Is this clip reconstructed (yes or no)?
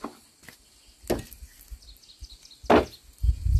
no